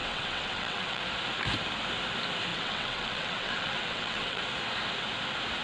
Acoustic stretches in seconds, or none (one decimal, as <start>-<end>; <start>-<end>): 1.0-2.5; 4.4-5.6